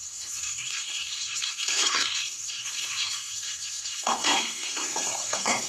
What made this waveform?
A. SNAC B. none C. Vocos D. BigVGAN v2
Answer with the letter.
A